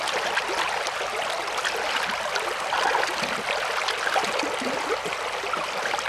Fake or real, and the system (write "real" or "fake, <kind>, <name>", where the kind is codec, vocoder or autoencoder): real